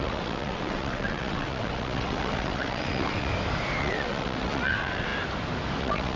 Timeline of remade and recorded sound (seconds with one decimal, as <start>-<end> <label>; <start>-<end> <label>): 0.0-3.3 remade; 3.3-3.8 recorded; 3.8-5.1 remade; 5.1-5.8 recorded; 5.8-6.2 remade